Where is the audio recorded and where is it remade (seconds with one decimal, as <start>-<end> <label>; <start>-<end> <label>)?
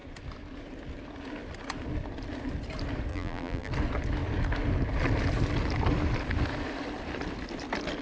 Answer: 0.0-3.1 recorded; 3.1-3.7 remade; 3.7-8.0 recorded